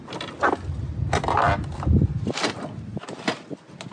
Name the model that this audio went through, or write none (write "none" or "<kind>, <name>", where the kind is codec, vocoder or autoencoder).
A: none